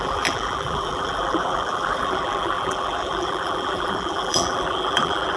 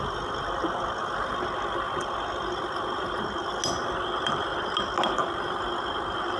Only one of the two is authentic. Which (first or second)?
second